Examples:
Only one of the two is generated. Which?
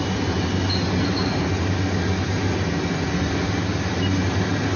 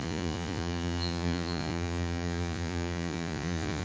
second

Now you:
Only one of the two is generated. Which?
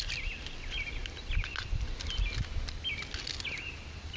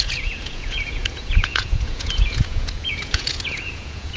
second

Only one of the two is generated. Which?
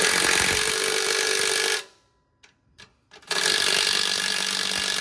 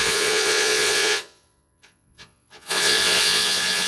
second